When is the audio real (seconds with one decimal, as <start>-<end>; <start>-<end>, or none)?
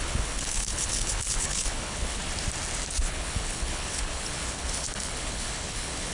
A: 2.2-3.0